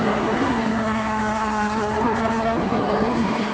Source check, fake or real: fake